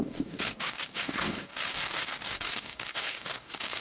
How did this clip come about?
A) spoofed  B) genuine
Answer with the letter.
A